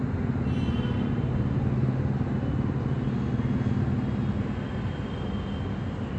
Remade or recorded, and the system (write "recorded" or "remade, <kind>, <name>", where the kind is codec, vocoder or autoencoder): recorded